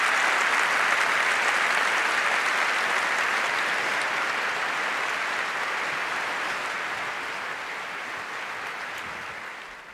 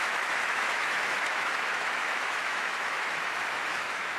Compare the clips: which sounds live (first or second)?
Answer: first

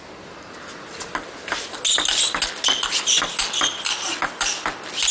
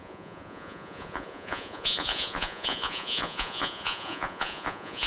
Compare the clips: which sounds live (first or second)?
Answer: first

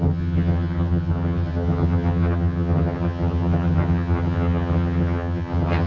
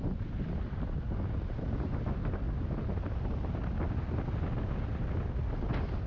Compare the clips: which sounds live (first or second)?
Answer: second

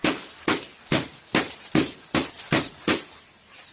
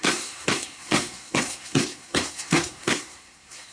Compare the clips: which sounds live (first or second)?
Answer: first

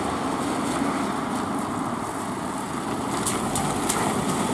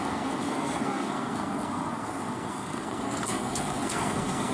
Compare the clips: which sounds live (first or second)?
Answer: first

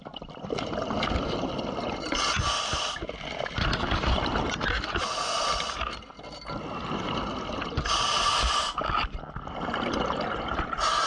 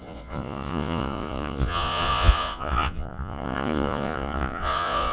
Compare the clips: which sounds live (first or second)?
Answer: first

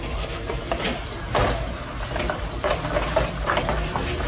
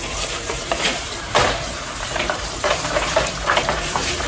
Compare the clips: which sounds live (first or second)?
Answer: first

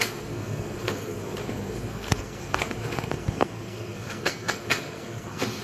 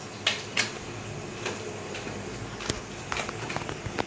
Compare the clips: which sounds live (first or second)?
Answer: second